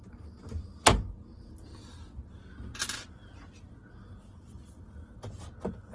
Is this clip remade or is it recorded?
recorded